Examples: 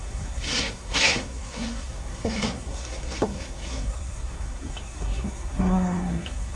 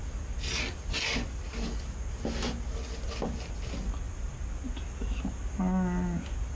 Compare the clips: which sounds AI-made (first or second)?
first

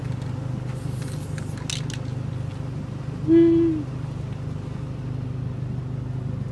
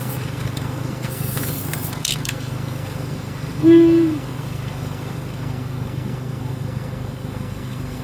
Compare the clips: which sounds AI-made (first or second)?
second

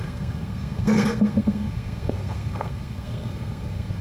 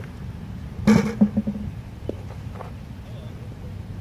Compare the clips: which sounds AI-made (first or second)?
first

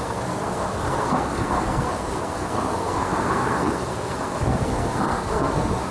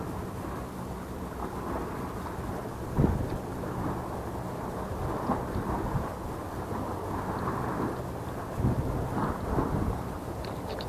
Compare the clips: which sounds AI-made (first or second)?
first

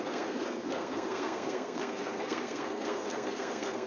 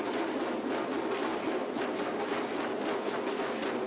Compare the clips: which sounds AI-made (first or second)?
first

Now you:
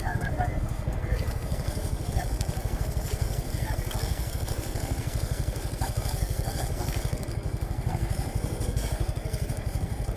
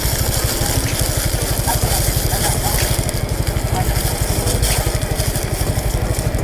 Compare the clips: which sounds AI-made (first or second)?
first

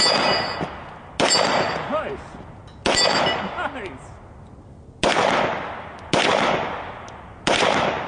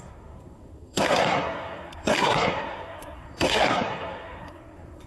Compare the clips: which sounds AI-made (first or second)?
second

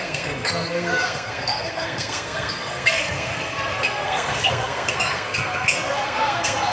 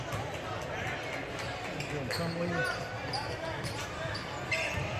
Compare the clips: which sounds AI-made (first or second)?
first